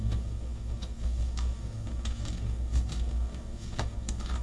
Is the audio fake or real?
fake